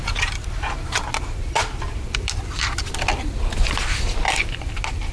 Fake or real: real